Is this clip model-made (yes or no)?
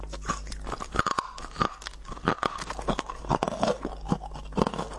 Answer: no